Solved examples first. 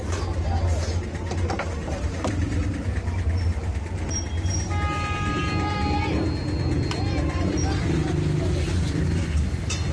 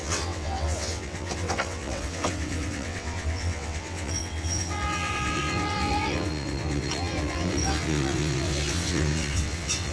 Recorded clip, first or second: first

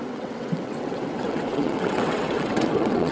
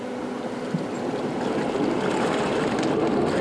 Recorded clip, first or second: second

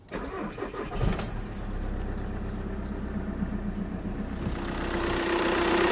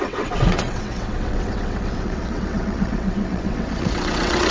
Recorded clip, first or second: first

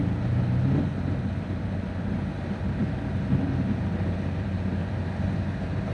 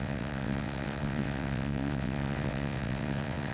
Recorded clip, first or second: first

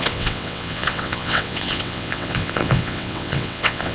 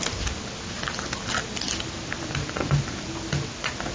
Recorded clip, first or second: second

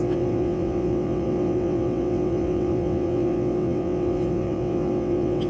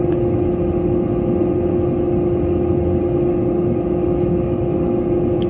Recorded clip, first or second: second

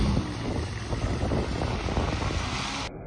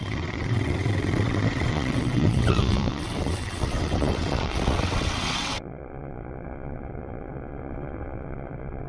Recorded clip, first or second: first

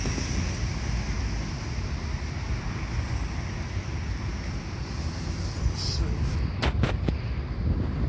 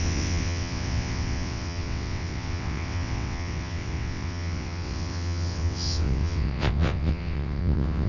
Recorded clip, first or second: first